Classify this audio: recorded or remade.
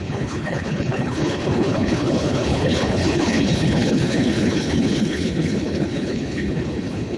remade